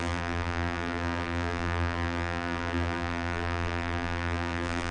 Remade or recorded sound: remade